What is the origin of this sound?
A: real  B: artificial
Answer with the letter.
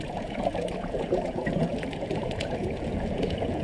B